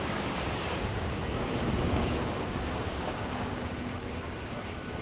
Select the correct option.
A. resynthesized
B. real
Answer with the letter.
A